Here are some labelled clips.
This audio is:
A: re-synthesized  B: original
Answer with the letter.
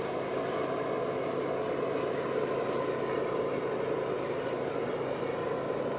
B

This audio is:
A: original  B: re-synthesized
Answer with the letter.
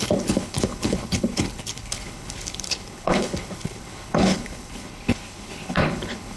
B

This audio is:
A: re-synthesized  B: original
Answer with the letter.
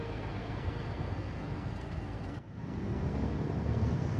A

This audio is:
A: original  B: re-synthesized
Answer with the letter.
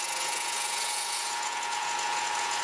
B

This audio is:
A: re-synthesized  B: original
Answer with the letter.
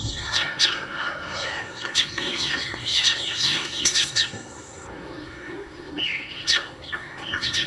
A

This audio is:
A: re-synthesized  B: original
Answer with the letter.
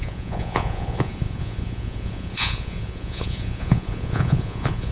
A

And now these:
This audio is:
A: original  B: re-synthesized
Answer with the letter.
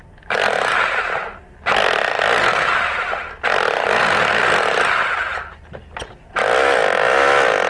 A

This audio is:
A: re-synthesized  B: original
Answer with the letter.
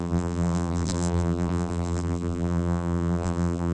A